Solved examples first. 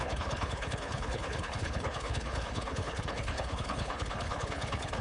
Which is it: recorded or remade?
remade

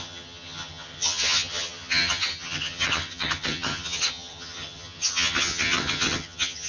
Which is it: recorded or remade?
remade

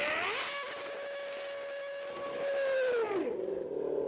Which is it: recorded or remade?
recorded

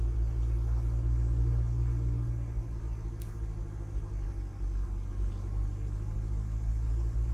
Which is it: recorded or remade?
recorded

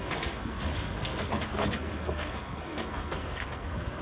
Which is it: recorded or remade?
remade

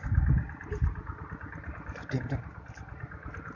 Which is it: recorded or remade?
recorded